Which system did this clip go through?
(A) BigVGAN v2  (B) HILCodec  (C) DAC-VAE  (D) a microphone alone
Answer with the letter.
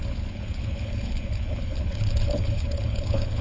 B